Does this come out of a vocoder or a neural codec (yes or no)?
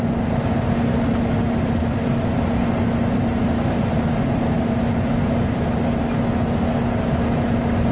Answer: no